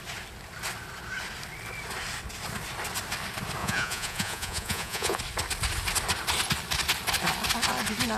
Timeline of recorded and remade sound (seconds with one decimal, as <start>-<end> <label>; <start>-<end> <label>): 0.0-3.6 recorded; 3.6-5.2 remade; 5.2-8.2 recorded